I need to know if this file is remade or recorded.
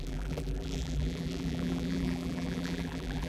remade